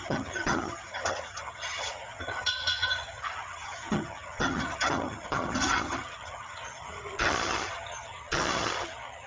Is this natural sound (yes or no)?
no